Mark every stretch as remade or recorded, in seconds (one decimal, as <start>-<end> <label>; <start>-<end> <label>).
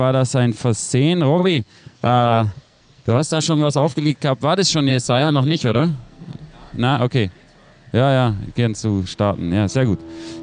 0.0-1.4 recorded; 1.4-4.1 remade; 4.1-4.9 recorded; 4.9-6.4 remade; 6.4-10.4 recorded